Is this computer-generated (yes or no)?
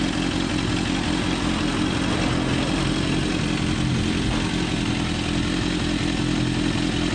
no